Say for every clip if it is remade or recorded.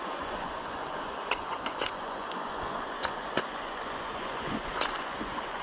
remade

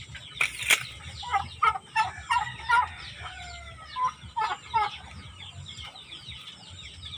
recorded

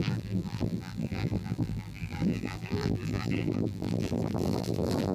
remade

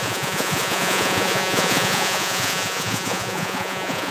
remade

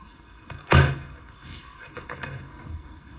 remade